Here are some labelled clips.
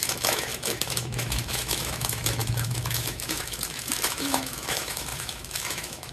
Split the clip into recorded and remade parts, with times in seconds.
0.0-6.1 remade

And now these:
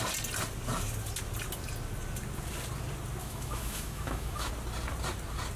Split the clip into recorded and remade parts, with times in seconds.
0.0-3.2 recorded; 3.2-4.5 remade; 4.5-5.6 recorded